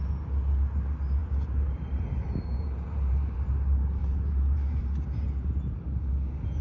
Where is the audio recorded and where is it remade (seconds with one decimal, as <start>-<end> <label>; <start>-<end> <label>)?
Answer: 0.0-1.2 recorded; 1.2-3.5 remade; 3.5-4.0 recorded; 4.0-5.0 remade; 5.0-6.6 recorded